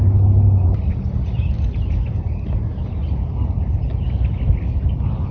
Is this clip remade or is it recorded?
recorded